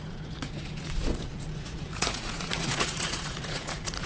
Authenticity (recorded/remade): remade